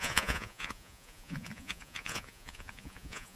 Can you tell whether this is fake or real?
fake